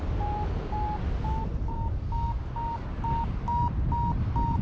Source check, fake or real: real